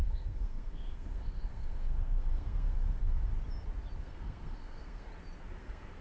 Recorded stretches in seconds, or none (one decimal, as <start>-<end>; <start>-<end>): 3.3-4.0; 5.1-5.6

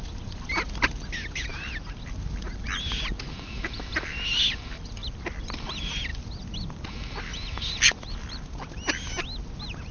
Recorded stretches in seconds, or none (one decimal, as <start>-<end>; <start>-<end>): 0.0-9.9

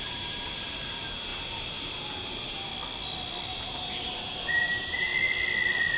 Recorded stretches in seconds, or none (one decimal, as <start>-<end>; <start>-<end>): 2.7-3.5; 5.1-6.0

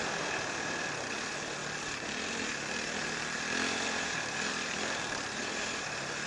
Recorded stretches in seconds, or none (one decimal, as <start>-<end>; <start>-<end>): 0.0-6.3